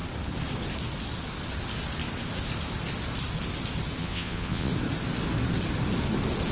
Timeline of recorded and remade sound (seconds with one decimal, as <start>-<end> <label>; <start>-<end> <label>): 0.0-4.0 recorded; 4.0-4.7 remade; 4.7-6.5 recorded

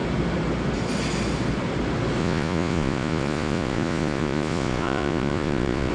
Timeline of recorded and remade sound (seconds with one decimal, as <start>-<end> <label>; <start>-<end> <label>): 0.0-2.2 recorded; 2.2-5.9 remade